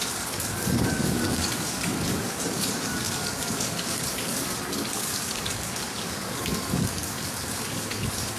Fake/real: fake